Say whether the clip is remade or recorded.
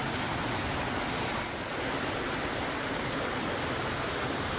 recorded